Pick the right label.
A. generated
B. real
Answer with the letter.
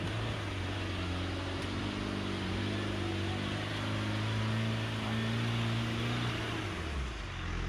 B